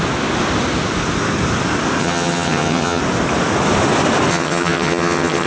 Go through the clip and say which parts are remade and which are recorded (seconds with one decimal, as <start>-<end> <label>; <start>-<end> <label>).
0.0-2.0 recorded; 2.0-3.0 remade; 3.0-4.3 recorded; 4.3-5.5 remade